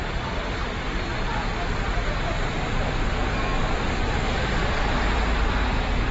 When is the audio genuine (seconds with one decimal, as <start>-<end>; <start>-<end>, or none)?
1.1-3.6